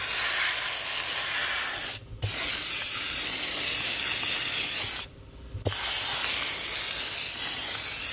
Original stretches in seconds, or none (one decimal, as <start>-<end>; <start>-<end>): 0.0-8.1